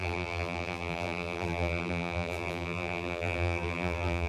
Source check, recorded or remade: remade